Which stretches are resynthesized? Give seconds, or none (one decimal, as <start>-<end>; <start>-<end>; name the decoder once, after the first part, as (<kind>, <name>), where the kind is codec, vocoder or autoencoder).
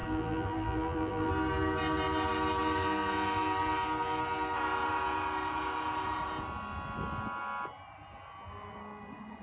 0.0-1.3 (vocoder, BigVGAN v2)